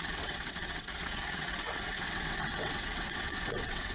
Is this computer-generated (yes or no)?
yes